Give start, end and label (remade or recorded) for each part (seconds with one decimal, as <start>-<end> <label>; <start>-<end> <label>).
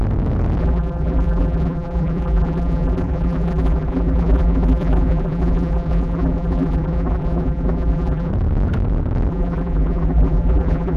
0.0-0.6 recorded; 0.6-8.3 remade; 8.3-9.3 recorded; 9.3-11.0 remade